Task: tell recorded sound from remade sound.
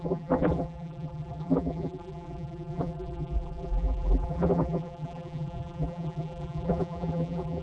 remade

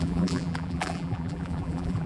remade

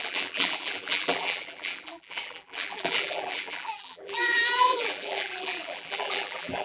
remade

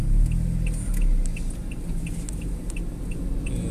recorded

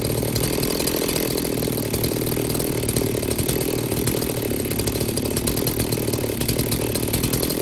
remade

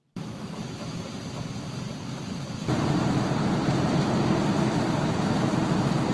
remade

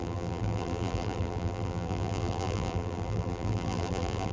remade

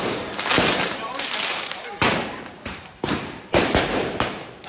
remade